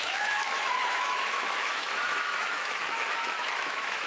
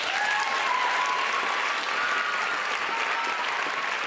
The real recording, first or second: second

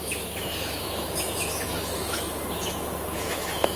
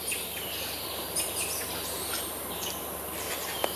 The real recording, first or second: second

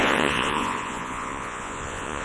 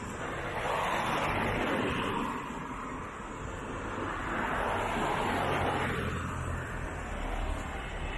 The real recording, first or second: second